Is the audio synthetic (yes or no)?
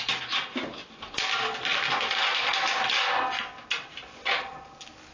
no